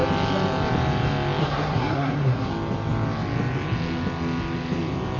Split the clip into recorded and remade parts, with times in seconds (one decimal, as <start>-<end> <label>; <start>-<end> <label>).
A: 0.0-1.4 recorded; 1.4-2.5 remade; 2.5-5.2 recorded